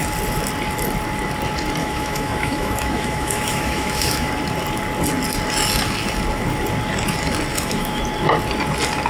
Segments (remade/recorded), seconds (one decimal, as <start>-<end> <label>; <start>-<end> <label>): 0.0-1.8 recorded; 1.8-4.3 remade; 4.3-7.5 recorded; 7.5-8.0 remade; 8.0-9.1 recorded